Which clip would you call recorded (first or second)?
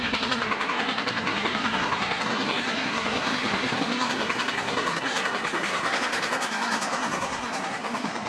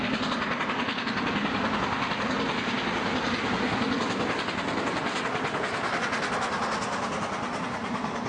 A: second